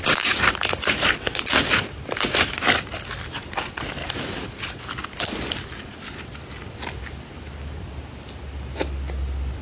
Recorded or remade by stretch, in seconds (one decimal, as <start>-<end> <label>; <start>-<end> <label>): 0.0-9.6 recorded